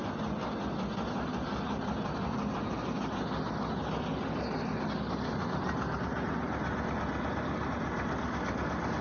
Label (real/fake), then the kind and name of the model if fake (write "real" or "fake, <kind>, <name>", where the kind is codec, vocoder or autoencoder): real